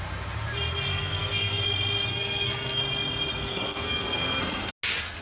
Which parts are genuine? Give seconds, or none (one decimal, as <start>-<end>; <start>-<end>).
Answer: 0.0-0.9; 1.6-2.1; 2.8-3.4; 4.7-5.2